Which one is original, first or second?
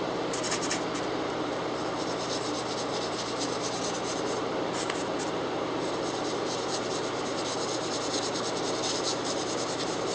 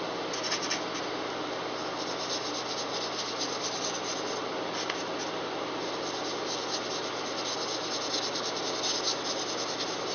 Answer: second